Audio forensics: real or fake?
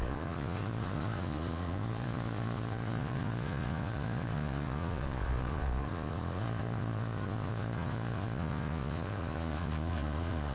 fake